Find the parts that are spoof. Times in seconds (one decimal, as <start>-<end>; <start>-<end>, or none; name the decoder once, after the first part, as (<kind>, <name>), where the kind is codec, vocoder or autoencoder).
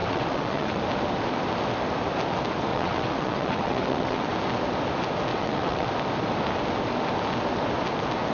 0.0-0.8 (vocoder, WaveNeXt); 2.7-4.3; 5.3-5.9